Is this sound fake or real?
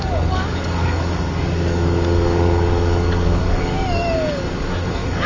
fake